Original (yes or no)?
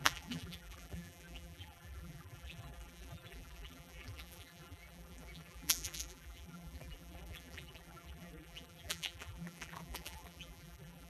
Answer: no